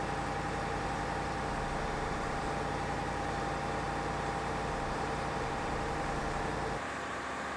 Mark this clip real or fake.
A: fake